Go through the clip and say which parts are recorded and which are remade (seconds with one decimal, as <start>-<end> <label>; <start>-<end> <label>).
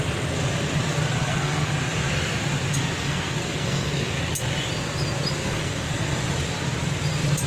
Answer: 0.0-1.2 recorded; 1.2-1.7 remade; 1.7-3.0 recorded; 3.0-4.2 remade; 4.2-5.4 recorded; 5.4-6.2 remade; 6.2-7.5 recorded